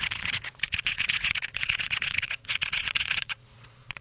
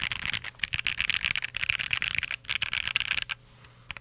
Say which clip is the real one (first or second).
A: second